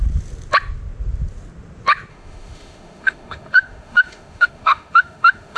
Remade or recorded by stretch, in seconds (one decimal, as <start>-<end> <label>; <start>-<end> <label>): 0.0-2.1 recorded; 2.1-5.6 remade